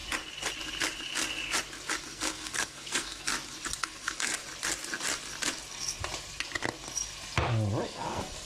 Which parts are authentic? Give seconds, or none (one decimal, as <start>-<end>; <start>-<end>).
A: 0.0-2.0; 3.3-3.8; 4.3-7.8